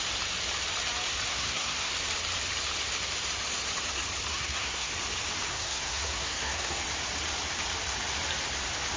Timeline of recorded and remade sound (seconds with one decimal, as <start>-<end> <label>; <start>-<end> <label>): 0.0-1.3 recorded; 1.3-1.9 remade; 1.9-4.3 recorded; 4.3-4.9 remade; 4.9-5.5 recorded; 5.5-6.8 remade; 6.8-9.0 recorded